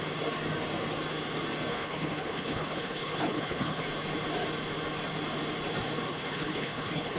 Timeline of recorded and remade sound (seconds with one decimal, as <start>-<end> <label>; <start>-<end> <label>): 0.0-1.7 recorded; 1.7-3.8 remade; 3.8-6.1 recorded; 6.1-7.2 remade